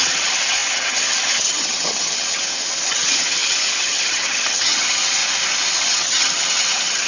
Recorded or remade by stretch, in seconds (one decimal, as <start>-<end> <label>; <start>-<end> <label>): 0.0-5.2 remade; 5.2-5.7 recorded; 5.7-7.1 remade